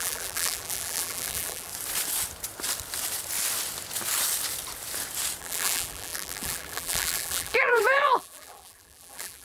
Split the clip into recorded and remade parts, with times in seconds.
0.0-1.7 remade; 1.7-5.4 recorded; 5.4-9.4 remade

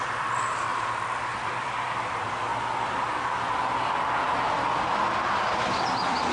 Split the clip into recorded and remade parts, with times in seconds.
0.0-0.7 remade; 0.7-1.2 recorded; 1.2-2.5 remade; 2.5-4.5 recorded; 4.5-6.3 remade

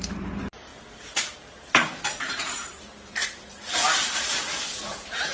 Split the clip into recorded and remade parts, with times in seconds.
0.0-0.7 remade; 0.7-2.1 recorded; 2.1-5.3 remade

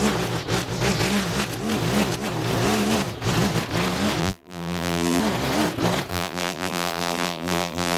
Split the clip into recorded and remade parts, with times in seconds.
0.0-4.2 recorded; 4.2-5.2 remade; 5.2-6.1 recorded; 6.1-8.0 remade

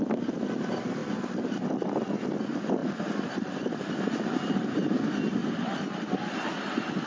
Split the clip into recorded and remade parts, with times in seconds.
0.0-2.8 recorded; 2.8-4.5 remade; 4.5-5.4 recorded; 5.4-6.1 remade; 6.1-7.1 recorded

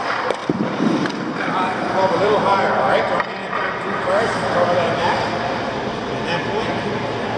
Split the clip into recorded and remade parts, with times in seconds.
0.0-0.4 recorded; 0.4-3.0 remade; 3.0-3.4 recorded; 3.4-5.9 remade; 5.9-7.4 recorded